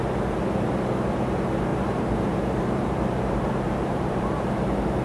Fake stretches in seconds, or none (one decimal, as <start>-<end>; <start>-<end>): 1.7-5.0